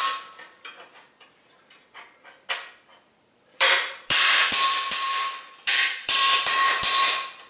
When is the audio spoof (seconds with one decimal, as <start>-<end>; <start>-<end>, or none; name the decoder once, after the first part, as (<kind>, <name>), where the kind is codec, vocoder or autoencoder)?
0.0-0.7 (vocoder, BigVGAN v2); 2.9-7.5